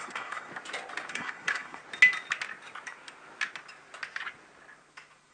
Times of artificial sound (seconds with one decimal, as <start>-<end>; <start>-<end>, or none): 0.0-0.5; 1.1-1.8